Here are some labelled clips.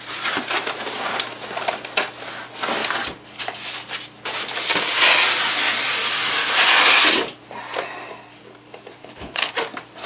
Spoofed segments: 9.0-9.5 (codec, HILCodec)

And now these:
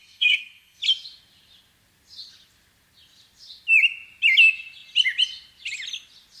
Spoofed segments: 0.0-0.8 (codec, SNAC)

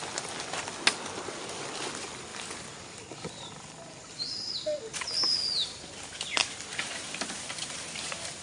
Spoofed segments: 2.3-4.5 (vocoder, BigVGAN v2)

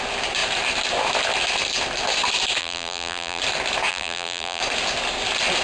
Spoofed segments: 2.6-3.4 (vocoder, BigVGAN v2); 3.9-4.6

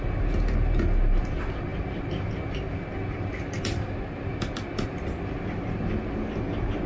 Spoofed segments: none